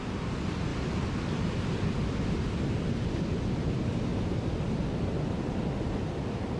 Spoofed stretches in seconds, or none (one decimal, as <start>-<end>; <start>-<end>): none